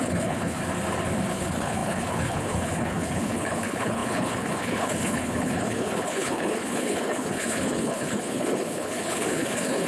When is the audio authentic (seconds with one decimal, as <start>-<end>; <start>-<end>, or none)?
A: 0.6-1.3